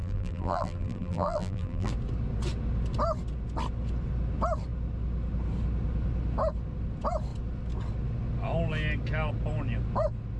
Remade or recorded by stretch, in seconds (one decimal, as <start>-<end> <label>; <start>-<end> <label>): 0.0-1.9 remade; 1.9-10.4 recorded